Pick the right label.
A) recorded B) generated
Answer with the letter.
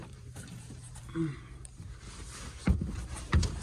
B